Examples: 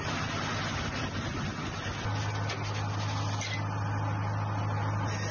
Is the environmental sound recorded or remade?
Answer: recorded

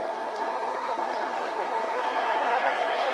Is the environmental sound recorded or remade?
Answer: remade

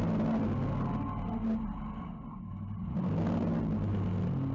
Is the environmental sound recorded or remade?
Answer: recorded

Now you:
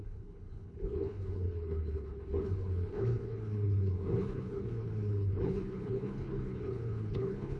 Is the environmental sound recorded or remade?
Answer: remade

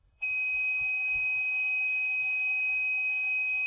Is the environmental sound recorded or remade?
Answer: remade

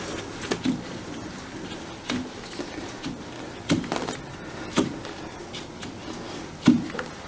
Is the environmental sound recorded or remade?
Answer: recorded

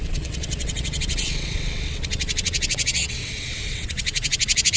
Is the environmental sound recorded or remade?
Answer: remade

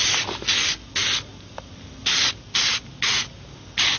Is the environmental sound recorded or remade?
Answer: recorded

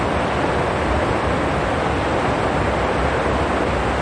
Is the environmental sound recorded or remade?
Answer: recorded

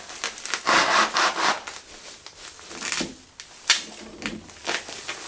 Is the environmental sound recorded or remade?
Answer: recorded